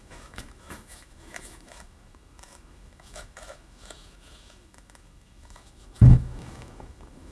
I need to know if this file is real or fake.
fake